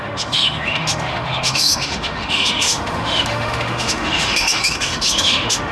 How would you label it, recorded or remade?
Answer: remade